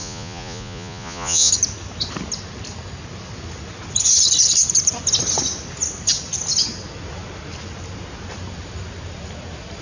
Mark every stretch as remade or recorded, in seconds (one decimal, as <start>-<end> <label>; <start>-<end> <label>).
0.0-1.5 remade; 1.5-9.8 recorded